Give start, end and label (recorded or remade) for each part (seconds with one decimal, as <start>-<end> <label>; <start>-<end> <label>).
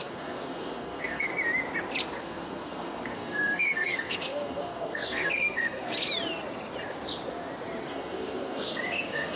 0.0-1.3 remade; 1.3-2.2 recorded; 2.2-5.9 remade; 5.9-7.9 recorded; 7.9-9.4 remade